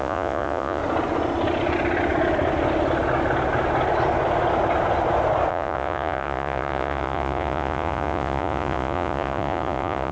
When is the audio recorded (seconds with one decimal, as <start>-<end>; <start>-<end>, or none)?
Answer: 0.8-5.5